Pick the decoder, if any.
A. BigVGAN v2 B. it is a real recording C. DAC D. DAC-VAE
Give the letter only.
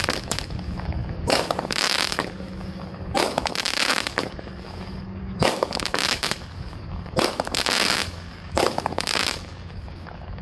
C